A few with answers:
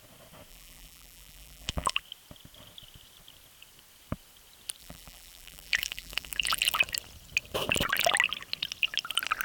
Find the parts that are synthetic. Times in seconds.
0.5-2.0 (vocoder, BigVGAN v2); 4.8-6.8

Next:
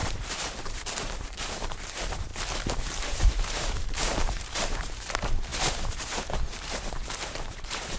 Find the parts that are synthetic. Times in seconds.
0.0-2.3 (vocoder, BigVGAN v2); 3.0-8.0

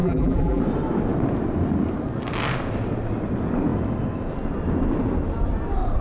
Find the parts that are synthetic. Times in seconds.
0.0-0.6 (vocoder, BigVGAN v2)

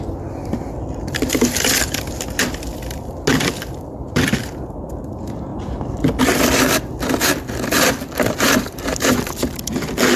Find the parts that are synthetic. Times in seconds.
none

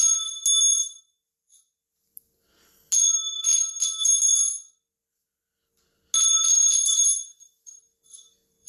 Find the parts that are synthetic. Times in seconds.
6.5-8.7 (vocoder, BigVGAN v2)

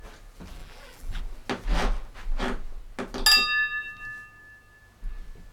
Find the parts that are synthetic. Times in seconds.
0.6-1.2 (vocoder, BigVGAN v2)